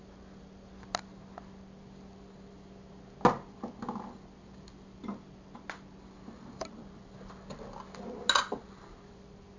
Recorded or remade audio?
recorded